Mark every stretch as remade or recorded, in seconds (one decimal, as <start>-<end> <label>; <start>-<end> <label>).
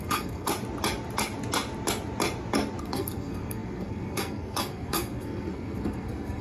0.0-0.5 remade; 0.5-2.8 recorded; 2.8-6.4 remade